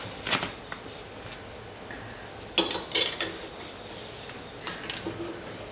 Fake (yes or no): no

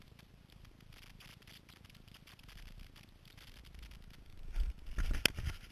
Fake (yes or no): no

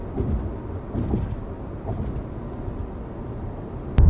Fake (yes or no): no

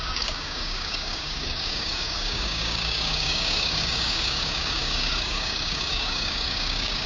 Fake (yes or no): yes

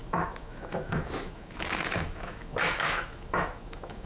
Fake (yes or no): yes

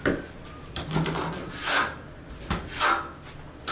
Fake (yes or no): no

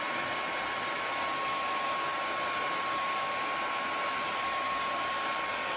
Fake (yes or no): no